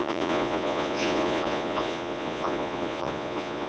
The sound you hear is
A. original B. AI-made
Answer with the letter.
B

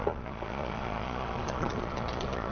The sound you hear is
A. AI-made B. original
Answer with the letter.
A